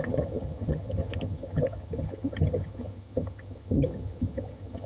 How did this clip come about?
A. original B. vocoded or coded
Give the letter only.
B